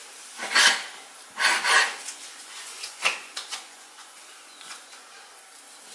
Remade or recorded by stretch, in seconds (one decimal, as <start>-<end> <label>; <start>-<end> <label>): 0.0-1.8 recorded; 1.8-5.3 remade; 5.3-5.9 recorded